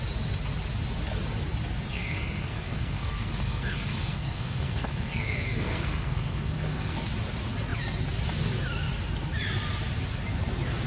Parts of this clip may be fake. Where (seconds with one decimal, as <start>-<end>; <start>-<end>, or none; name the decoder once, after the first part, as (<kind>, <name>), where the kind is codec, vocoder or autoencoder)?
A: 1.9-7.1 (codec, SNAC)